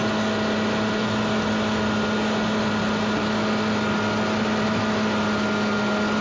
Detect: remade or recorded recorded